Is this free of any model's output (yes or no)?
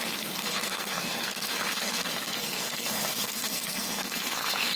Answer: no